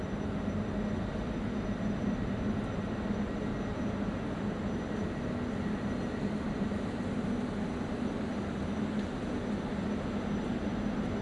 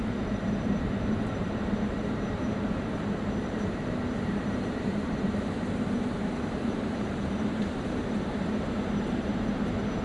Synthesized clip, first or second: second